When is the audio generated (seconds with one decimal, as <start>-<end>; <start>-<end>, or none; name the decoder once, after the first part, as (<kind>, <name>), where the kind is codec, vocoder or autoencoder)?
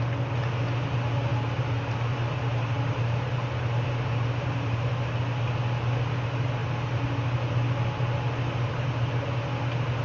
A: 1.3-4.9 (vocoder, BigVGAN v2)